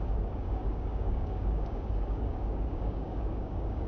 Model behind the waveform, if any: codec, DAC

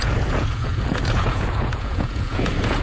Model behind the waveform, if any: vocoder, Vocos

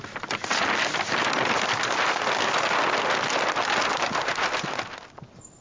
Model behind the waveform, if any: none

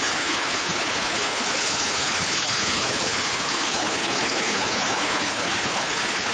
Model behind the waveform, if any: codec, HILCodec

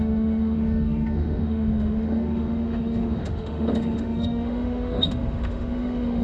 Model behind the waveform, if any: autoencoder, DAC-VAE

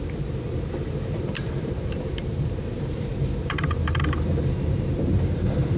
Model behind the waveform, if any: vocoder, BigVGAN v2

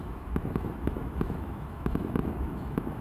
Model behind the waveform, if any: autoencoder, DAC-VAE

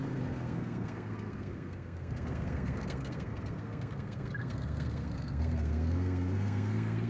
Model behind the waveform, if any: codec, SNAC